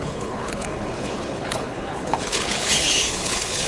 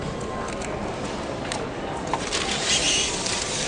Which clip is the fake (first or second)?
first